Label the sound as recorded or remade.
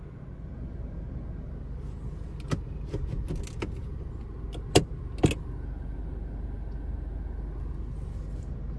recorded